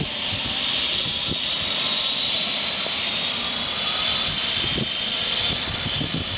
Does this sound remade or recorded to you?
remade